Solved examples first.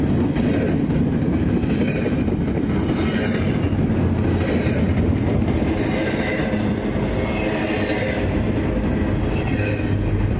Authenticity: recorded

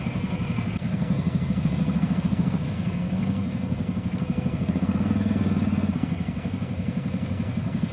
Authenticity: remade